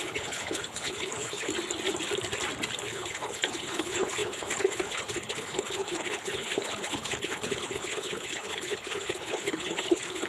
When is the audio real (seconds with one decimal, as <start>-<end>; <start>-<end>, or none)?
1.5-2.8